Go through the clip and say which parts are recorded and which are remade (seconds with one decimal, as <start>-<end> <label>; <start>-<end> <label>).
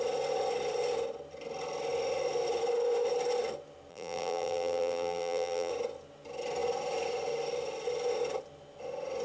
0.0-3.9 recorded; 3.9-5.7 remade; 5.7-9.2 recorded